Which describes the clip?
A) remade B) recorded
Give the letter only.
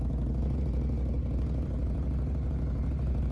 A